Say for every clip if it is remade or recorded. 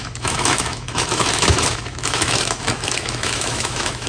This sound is remade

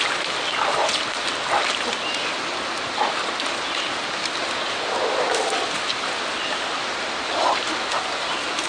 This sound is recorded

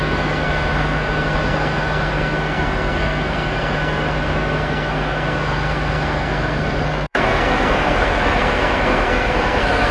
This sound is remade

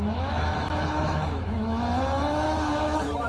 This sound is remade